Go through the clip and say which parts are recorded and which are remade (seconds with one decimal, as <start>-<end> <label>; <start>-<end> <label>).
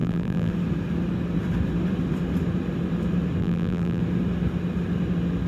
0.0-0.5 remade; 0.5-3.4 recorded; 3.4-4.0 remade; 4.0-5.5 recorded